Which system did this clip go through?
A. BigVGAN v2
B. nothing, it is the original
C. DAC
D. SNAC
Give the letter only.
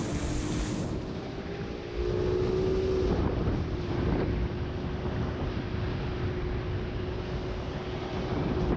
B